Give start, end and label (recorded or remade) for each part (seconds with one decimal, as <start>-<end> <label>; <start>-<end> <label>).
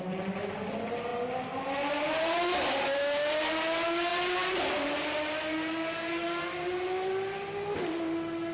0.0-8.5 recorded